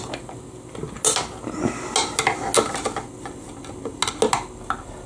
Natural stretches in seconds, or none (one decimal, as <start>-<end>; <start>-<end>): 0.0-5.1